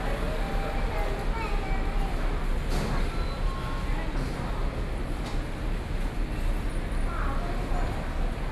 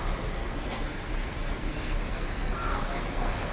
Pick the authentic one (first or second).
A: first